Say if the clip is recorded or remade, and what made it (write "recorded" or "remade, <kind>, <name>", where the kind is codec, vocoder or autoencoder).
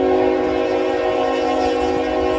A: recorded